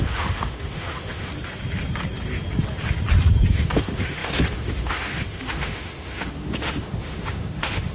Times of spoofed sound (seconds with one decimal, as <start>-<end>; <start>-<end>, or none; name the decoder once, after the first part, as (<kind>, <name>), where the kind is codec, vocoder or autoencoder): 0.0-1.3 (autoencoder, DAC-VAE); 3.5-7.9